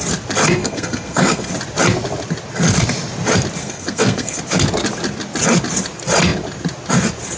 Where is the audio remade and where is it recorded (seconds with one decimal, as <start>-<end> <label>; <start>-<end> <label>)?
0.0-0.6 recorded; 0.6-1.5 remade; 1.5-3.6 recorded; 3.6-4.4 remade; 4.4-7.4 recorded